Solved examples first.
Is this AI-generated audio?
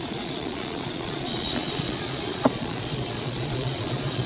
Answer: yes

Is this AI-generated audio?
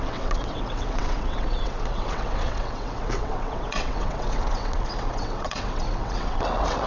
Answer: yes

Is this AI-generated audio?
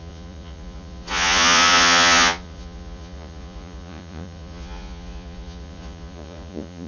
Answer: yes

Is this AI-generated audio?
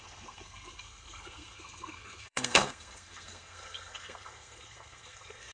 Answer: yes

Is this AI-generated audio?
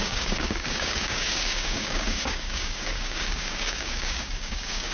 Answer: yes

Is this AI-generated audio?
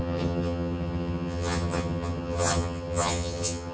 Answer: yes